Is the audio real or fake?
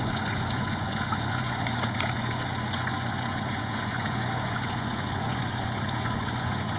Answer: fake